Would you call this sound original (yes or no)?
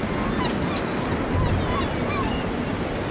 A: yes